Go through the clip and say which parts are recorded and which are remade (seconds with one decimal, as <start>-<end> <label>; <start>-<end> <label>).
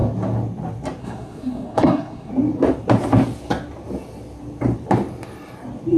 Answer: 0.0-1.0 recorded; 1.0-2.3 remade; 2.3-6.0 recorded